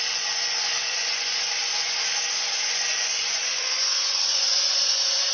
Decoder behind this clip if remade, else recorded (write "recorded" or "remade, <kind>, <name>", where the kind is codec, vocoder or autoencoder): remade, vocoder, Vocos